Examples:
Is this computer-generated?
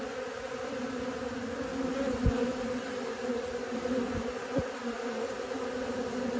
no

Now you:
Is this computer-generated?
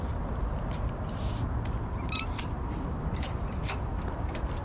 no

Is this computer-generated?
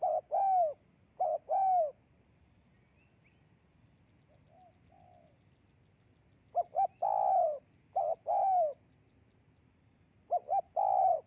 no